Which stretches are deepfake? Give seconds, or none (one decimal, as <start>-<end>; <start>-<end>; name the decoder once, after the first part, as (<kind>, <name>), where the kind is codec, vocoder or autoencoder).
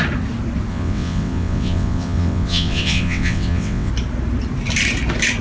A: 0.7-3.9 (vocoder, WaveNeXt)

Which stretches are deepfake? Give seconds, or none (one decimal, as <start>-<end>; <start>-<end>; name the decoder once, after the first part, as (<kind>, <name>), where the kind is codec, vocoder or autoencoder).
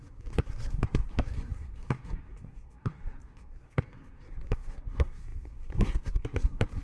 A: 0.0-6.8 (codec, SNAC)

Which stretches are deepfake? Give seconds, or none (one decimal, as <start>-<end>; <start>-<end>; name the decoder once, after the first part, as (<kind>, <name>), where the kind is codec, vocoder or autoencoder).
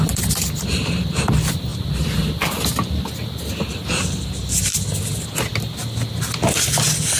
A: none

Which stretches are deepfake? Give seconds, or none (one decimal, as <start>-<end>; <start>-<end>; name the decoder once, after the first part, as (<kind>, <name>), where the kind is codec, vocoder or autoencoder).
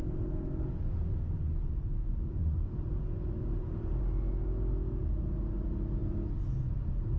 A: 1.9-4.0 (vocoder, BigVGAN v2)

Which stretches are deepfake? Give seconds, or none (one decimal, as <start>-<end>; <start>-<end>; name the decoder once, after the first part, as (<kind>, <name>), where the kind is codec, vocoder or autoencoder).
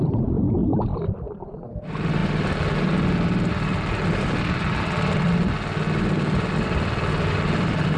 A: 0.0-2.2 (vocoder, BigVGAN v2); 6.6-8.0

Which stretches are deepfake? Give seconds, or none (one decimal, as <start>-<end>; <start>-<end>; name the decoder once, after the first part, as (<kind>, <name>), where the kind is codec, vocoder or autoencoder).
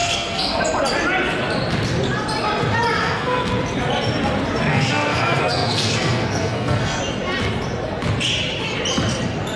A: 0.0-0.6 (codec, SNAC); 3.0-3.5; 4.7-7.0